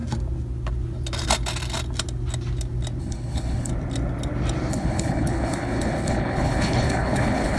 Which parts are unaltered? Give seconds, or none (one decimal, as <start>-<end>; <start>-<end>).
0.0-3.0; 3.7-4.7